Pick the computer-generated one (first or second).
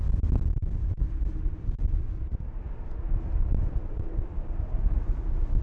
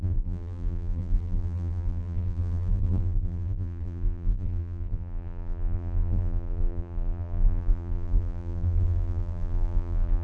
second